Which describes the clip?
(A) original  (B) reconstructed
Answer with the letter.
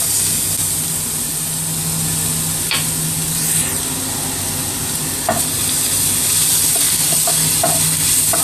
A